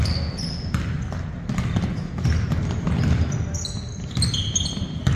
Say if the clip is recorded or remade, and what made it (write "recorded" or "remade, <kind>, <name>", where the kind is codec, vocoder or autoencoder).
recorded